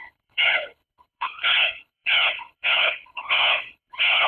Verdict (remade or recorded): remade